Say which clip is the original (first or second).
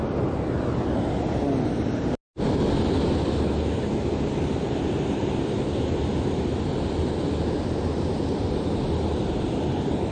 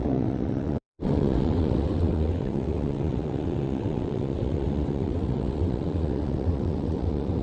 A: first